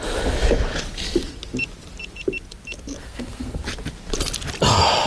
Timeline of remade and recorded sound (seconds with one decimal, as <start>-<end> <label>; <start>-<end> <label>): 0.0-3.0 recorded; 3.0-3.6 remade; 3.6-5.1 recorded